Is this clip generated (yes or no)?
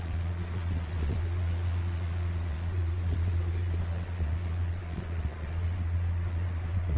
yes